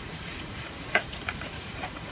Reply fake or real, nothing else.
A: fake